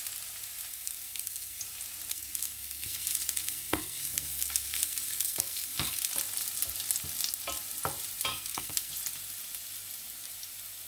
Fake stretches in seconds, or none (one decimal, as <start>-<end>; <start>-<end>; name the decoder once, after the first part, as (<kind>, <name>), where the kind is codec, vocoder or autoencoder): 0.7-1.6 (codec, SNAC); 2.1-6.1; 8.3-8.9